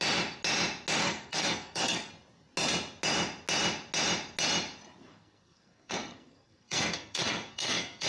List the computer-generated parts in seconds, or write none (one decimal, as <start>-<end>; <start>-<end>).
1.0-2.1; 5.1-8.1